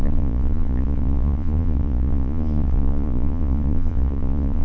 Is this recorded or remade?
remade